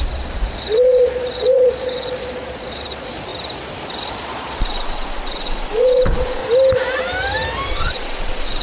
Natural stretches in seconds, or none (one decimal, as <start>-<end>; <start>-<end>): 3.3-4.0; 6.4-7.7